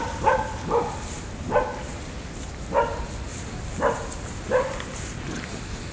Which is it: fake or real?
real